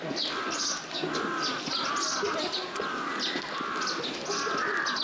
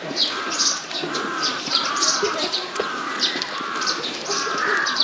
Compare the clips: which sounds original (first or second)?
first